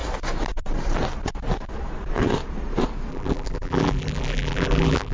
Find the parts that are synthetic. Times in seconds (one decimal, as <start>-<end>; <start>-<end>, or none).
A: 3.1-5.1